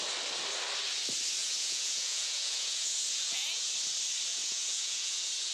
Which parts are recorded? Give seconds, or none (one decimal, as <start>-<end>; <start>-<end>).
0.0-1.4; 3.7-4.3